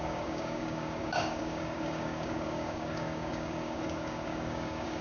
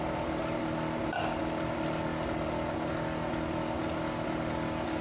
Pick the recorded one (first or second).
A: second